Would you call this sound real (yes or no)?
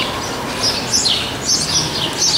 yes